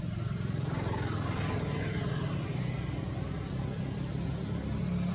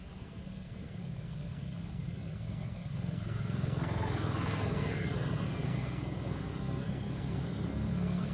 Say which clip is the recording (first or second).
first